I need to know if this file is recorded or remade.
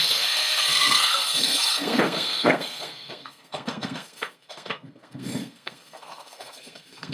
remade